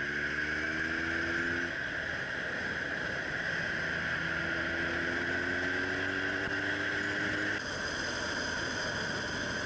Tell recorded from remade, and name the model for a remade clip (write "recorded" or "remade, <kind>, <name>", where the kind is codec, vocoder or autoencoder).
recorded